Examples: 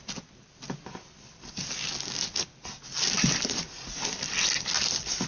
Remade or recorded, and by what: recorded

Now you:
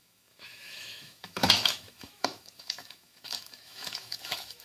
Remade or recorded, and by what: remade, autoencoder, DAC-VAE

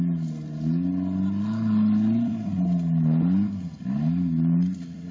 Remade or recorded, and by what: recorded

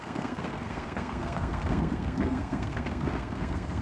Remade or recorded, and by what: remade, codec, SNAC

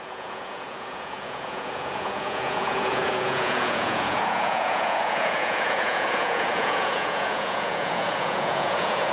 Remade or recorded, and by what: remade, vocoder, Vocos